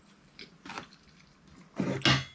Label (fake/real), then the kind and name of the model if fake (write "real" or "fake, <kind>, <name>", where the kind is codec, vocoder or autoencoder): real